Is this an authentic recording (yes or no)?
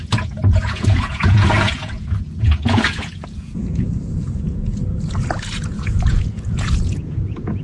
no